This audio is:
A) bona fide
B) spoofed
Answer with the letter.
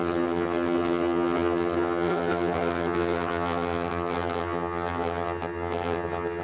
B